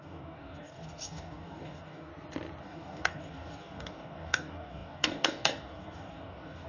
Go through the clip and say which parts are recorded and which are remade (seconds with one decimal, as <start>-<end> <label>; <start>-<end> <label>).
0.0-2.1 remade; 2.1-2.6 recorded; 2.6-6.7 remade